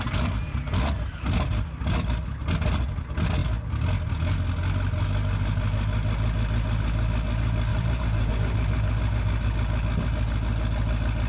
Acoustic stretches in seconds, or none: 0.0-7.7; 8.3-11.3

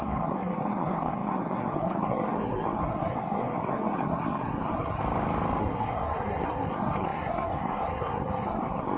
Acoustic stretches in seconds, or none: 5.0-5.6

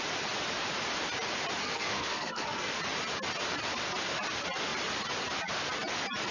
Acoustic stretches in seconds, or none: 0.0-1.6; 2.8-6.3